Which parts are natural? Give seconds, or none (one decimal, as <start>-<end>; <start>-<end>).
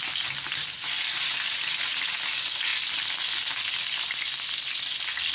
0.0-5.3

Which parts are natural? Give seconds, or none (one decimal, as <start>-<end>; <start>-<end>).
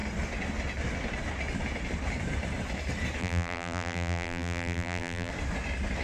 0.0-3.2; 5.3-6.0